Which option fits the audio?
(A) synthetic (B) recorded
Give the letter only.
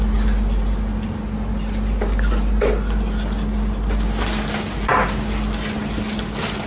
B